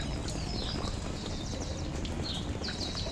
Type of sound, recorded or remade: recorded